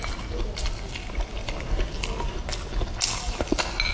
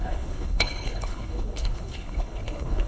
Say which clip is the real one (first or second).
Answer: first